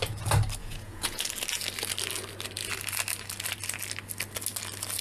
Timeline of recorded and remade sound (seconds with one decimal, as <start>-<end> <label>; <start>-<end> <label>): 0.0-0.6 recorded; 0.6-1.2 remade; 1.2-5.0 recorded